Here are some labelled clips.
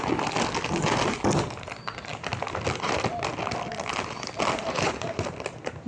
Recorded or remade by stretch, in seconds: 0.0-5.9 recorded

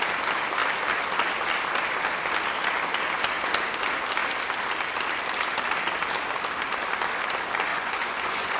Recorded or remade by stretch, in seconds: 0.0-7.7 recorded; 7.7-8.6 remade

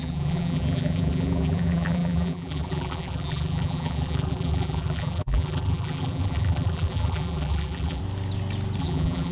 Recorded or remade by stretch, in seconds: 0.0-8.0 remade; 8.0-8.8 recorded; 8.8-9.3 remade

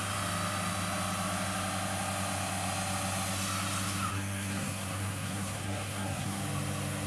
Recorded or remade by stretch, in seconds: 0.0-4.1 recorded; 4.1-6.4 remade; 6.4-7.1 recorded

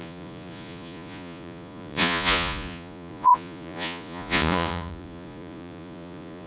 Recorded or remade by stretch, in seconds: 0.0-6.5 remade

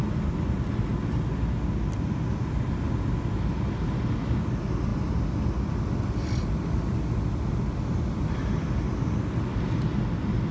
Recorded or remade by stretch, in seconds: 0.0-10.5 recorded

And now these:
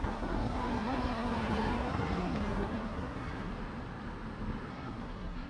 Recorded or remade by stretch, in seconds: 0.0-3.5 remade; 3.5-4.7 recorded; 4.7-5.5 remade